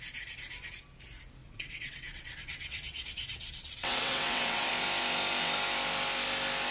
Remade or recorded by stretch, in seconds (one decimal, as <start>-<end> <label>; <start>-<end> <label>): 0.0-1.4 recorded; 1.4-4.7 remade; 4.7-6.7 recorded